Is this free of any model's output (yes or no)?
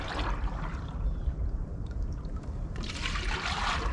yes